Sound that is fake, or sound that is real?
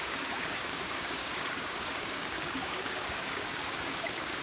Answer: fake